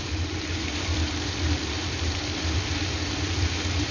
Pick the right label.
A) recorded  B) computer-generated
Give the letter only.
B